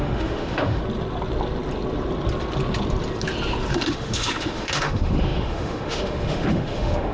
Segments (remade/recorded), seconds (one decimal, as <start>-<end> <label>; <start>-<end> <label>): 0.0-0.8 remade; 0.8-3.7 recorded; 3.7-7.1 remade